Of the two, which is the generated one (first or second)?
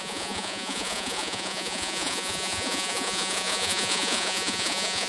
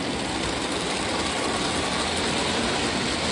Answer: first